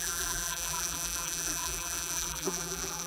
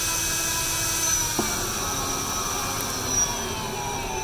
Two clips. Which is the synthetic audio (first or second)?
first